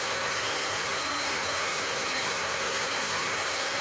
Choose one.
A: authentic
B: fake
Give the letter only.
B